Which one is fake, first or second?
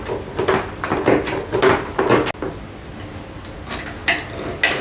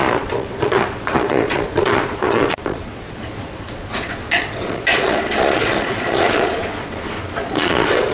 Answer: second